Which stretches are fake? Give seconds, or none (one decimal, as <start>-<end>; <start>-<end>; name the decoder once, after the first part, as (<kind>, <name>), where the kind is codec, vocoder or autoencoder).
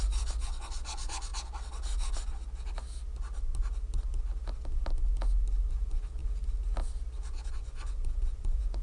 0.0-1.3 (vocoder, Vocos); 5.7-6.2; 7.5-8.8